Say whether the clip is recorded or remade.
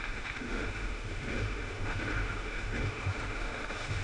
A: remade